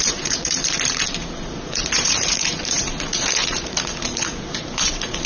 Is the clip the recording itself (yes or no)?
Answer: no